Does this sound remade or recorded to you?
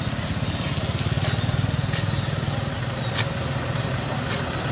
recorded